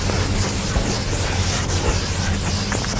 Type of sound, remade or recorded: recorded